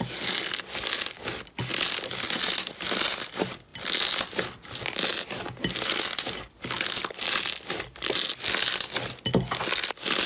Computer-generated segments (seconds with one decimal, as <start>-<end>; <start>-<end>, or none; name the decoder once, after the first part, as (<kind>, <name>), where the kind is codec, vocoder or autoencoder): none